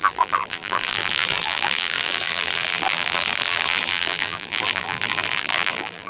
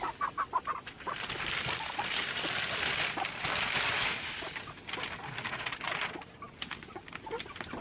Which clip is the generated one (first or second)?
first